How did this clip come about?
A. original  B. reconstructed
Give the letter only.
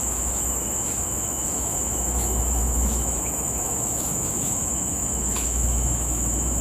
B